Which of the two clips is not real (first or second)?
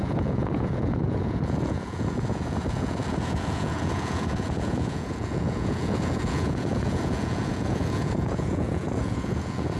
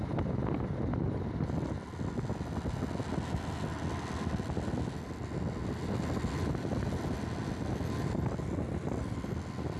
first